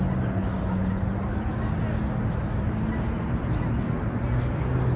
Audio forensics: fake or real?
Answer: real